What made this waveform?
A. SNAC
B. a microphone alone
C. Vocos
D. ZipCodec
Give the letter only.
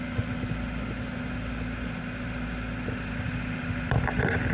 B